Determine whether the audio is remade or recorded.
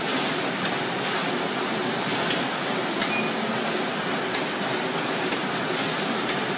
recorded